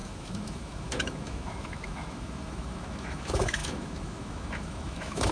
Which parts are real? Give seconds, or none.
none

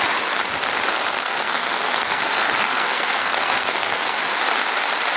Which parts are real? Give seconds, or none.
0.0-1.1; 4.2-5.2